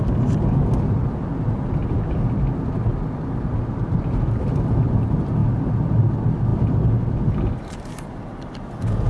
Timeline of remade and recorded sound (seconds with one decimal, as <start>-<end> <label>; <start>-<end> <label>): 0.0-1.8 remade; 1.8-3.7 recorded; 3.7-9.1 remade